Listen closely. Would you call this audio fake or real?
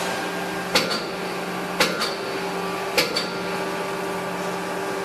real